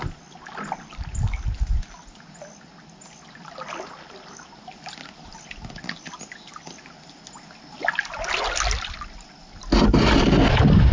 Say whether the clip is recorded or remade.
recorded